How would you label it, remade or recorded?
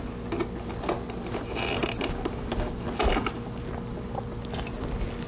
recorded